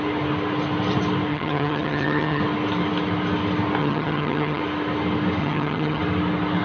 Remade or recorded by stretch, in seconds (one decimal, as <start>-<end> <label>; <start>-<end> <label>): 0.0-1.3 recorded; 1.3-2.4 remade; 2.4-3.8 recorded; 3.8-4.6 remade; 4.6-5.4 recorded; 5.4-6.0 remade; 6.0-6.6 recorded